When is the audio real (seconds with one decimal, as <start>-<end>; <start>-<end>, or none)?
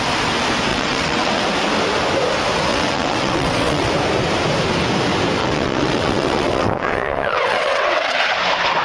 0.0-0.7; 1.4-2.7; 3.9-5.4; 8.3-8.8